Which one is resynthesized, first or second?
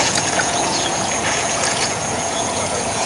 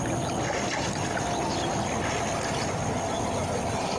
first